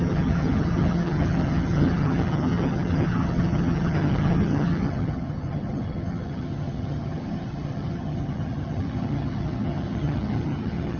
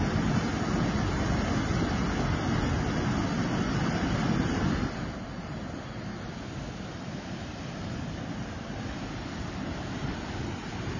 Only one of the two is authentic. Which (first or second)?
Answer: second